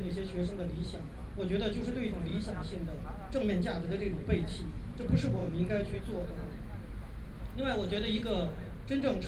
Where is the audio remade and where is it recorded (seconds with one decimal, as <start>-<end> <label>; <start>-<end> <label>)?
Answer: 0.0-9.3 recorded